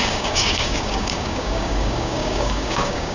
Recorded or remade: remade